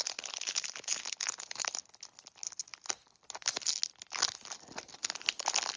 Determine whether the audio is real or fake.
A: real